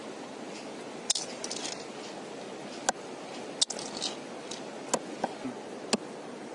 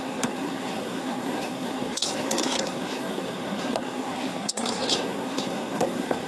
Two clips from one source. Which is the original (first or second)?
first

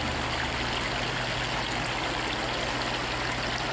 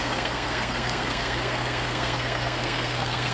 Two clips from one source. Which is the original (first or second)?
first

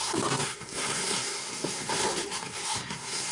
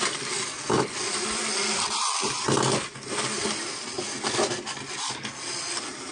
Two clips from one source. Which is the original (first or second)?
second